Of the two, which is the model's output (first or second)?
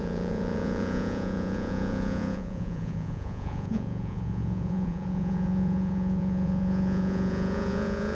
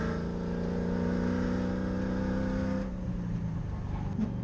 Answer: first